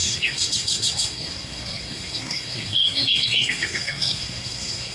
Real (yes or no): no